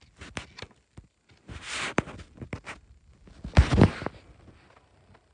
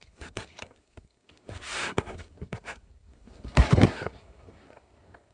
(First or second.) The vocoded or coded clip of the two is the second